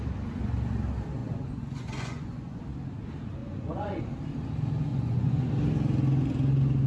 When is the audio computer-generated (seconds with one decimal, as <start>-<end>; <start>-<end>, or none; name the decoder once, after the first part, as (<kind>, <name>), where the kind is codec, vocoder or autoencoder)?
1.2-2.6 (vocoder, Vocos); 3.4-4.0; 4.9-5.5